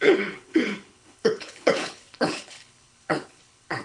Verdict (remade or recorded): remade